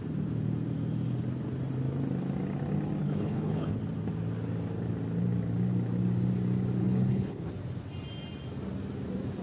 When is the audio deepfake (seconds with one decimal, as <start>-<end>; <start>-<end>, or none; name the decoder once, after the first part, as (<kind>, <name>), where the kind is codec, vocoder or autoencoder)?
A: 3.0-3.8 (codec, HILCodec); 6.8-7.5